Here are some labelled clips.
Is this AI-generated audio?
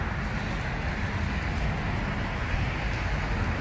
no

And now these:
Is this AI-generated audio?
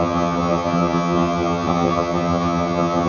yes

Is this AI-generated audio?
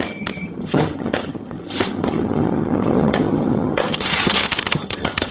yes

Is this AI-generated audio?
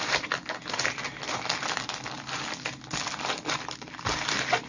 no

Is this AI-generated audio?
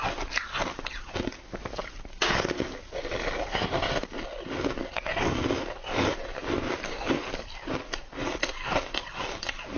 no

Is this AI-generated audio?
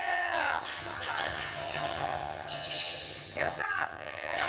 yes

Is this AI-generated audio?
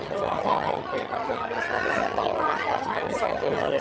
yes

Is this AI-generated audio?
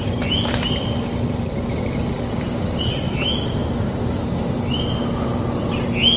no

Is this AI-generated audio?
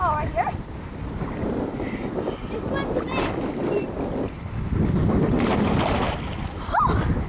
no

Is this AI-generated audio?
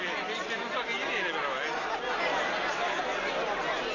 no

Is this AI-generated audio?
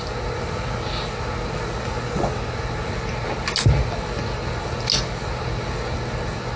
no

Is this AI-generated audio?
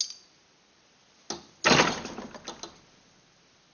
no